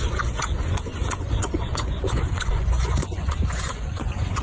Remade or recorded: remade